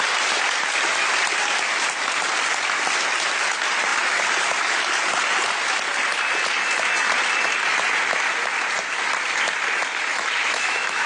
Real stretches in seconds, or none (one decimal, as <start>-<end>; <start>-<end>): 0.0-10.1